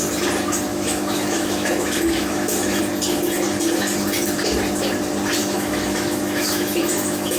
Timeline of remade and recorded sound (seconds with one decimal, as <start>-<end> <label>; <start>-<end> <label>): 0.0-0.7 recorded; 0.7-2.8 remade; 2.8-5.4 recorded; 5.4-7.4 remade